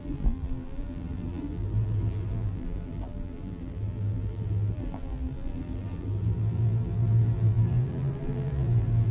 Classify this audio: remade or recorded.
remade